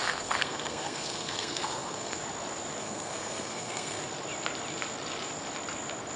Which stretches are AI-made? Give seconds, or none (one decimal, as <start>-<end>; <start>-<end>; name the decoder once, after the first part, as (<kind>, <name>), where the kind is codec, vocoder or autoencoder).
0.0-2.2 (codec, SNAC); 2.8-4.0